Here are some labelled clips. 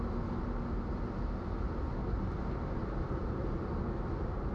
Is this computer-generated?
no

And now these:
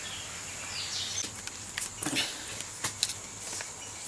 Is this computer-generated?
no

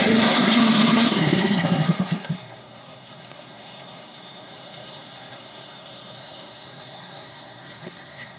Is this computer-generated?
yes